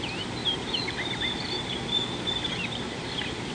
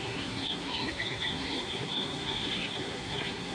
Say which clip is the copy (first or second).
second